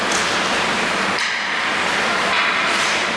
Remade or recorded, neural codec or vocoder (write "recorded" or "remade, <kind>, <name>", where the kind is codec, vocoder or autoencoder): recorded